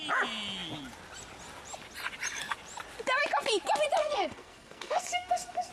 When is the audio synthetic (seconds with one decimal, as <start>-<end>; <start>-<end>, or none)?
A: 4.0-5.7